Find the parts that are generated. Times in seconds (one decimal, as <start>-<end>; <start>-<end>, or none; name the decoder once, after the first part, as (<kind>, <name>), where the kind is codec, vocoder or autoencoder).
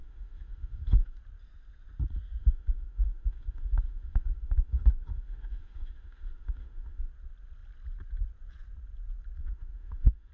0.0-1.2 (autoencoder, DAC-VAE); 2.4-7.1; 9.4-10.3